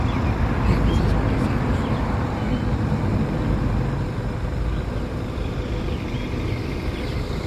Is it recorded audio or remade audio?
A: recorded